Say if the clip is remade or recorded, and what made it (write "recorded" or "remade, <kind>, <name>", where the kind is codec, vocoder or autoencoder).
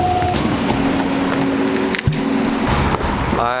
recorded